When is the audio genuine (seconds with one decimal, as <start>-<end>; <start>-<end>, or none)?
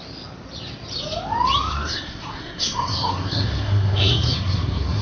0.0-1.7